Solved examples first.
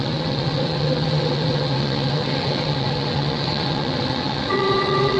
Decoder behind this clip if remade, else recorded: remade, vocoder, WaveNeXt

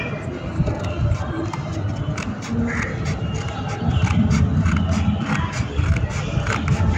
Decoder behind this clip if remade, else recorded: recorded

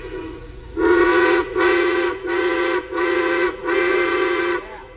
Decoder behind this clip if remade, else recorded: remade, vocoder, Vocos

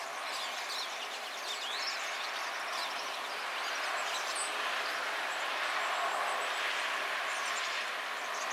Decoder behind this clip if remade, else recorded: recorded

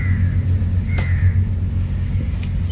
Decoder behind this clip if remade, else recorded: recorded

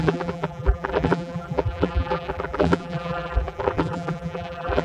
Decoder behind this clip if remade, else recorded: remade, vocoder, BigVGAN v2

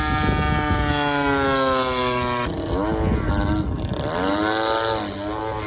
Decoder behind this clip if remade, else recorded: recorded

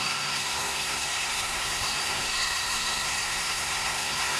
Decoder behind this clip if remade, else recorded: remade, codec, SNAC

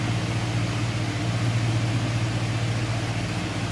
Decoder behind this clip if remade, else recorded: recorded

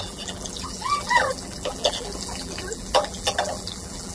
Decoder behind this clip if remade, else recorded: remade, vocoder, BigVGAN v2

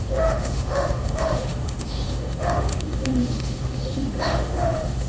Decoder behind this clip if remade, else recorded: remade, autoencoder, DAC-VAE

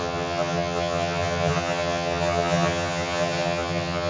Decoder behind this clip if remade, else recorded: remade, vocoder, HiFi-GAN